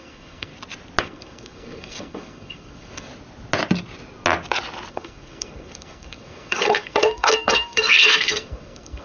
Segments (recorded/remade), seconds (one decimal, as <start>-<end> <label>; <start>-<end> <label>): 0.0-0.5 remade; 0.5-1.0 recorded; 1.0-3.1 remade; 3.1-4.9 recorded; 4.9-9.0 remade

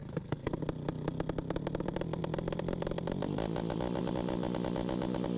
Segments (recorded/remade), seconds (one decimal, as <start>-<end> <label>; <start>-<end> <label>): 0.0-0.6 remade; 0.6-5.4 recorded

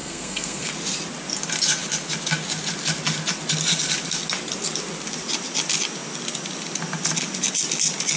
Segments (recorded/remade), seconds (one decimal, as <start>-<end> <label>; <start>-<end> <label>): 0.0-0.7 remade; 0.7-8.2 recorded

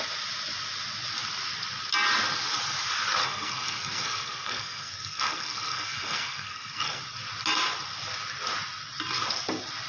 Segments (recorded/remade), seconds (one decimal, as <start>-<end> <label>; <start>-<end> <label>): 0.0-3.2 recorded; 3.2-7.0 remade; 7.0-9.9 recorded

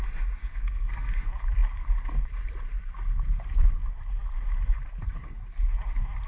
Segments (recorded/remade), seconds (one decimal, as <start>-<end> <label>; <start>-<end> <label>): 0.0-0.4 recorded; 0.4-1.1 remade; 1.1-6.3 recorded

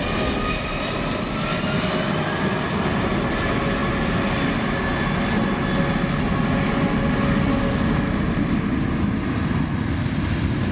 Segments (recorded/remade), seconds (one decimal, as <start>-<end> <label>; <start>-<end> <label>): 0.0-10.7 recorded

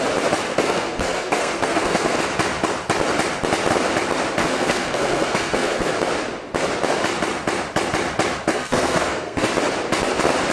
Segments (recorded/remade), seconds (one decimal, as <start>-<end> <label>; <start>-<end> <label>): 0.0-0.5 recorded; 0.5-2.2 remade; 2.2-4.4 recorded; 4.4-5.9 remade; 5.9-8.5 recorded; 8.5-9.5 remade; 9.5-10.5 recorded